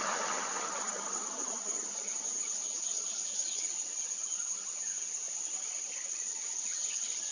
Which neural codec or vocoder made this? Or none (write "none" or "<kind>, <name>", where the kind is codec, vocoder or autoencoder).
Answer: vocoder, HiFi-GAN